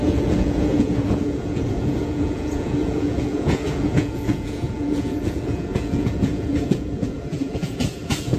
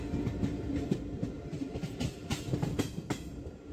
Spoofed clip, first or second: first